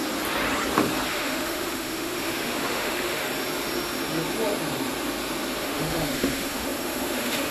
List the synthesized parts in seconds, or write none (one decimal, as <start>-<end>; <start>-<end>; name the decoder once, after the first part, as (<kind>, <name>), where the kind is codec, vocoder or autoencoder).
1.1-3.2 (autoencoder, DAC-VAE); 5.6-7.5